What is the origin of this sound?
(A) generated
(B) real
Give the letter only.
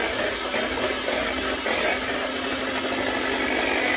B